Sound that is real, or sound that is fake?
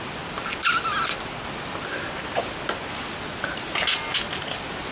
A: real